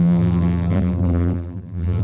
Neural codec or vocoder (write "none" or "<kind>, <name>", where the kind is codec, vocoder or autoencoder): vocoder, BigVGAN v2